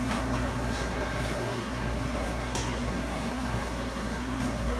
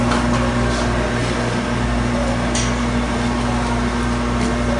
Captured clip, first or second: second